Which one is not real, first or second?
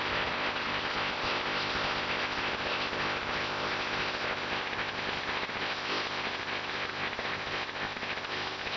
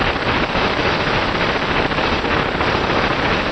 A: first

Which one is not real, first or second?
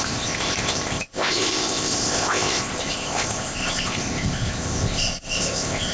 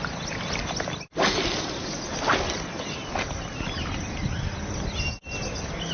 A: first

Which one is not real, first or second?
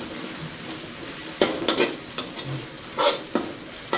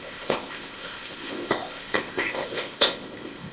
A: second